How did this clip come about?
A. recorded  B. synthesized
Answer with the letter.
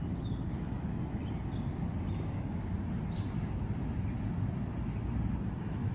A